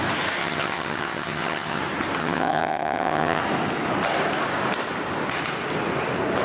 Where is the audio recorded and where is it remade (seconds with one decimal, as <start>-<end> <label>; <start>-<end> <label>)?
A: 0.0-0.4 recorded; 0.4-1.8 remade; 1.8-2.2 recorded; 2.2-3.4 remade; 3.4-6.4 recorded